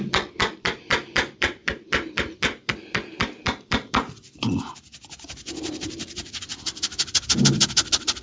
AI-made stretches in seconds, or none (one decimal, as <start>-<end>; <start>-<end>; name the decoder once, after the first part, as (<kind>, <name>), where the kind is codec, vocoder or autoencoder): none